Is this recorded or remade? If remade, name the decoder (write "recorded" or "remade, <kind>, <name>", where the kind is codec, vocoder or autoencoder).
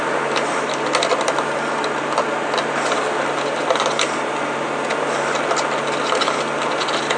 recorded